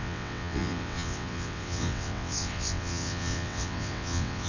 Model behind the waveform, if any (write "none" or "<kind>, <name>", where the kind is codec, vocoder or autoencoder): vocoder, WaveNeXt